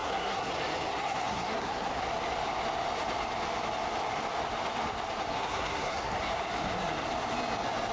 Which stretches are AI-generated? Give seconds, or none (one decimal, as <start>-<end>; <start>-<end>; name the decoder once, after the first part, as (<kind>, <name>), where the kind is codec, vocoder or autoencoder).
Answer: 0.0-0.5 (codec, SNAC); 0.9-2.0; 5.3-6.4